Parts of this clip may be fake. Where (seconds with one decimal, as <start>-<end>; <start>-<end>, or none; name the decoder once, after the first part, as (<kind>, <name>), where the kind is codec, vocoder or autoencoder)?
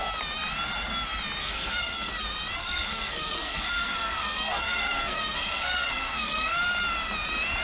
1.4-2.1 (codec, SNAC); 2.6-6.6